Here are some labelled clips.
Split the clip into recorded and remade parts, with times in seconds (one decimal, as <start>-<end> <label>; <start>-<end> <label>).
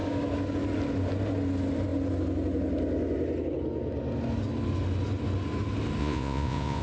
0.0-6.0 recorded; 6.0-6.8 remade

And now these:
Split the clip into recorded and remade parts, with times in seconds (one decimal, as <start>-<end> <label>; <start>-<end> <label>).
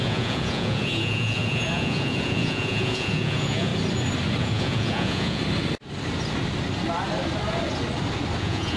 0.0-3.7 remade; 3.7-4.4 recorded; 4.4-5.4 remade; 5.4-8.4 recorded; 8.4-8.8 remade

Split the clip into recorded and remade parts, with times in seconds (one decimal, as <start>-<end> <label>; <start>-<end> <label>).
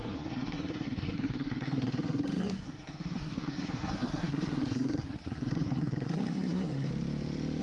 0.0-6.9 remade; 6.9-7.6 recorded